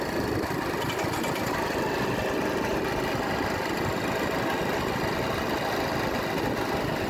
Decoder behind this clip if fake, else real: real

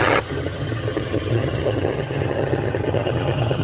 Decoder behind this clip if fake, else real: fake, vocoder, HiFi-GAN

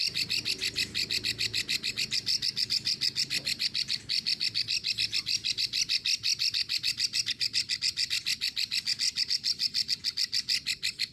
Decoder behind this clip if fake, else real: real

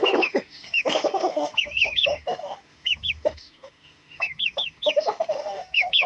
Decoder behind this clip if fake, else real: fake, autoencoder, DAC-VAE